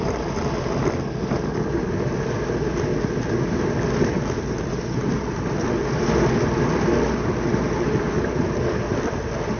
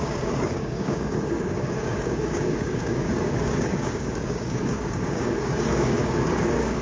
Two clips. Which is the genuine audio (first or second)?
first